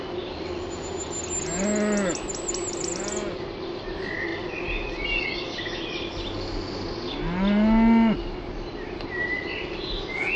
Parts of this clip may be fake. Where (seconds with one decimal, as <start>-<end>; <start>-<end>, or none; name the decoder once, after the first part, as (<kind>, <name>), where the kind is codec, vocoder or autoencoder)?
none